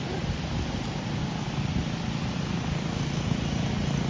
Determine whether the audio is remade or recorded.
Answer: recorded